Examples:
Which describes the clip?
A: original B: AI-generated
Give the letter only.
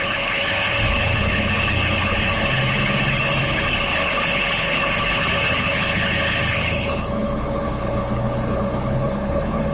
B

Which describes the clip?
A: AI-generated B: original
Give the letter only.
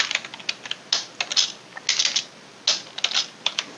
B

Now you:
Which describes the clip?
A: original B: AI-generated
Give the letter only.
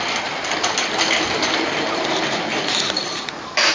A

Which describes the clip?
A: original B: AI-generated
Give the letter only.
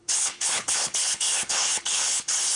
B